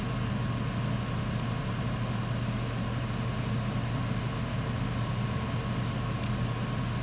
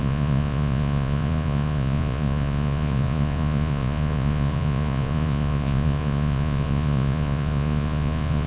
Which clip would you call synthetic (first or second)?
second